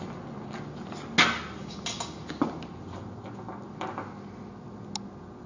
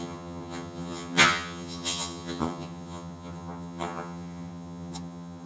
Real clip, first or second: first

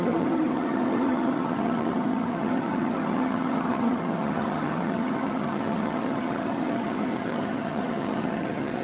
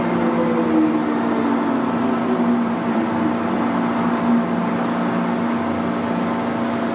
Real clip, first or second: second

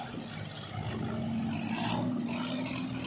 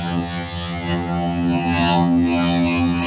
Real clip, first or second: first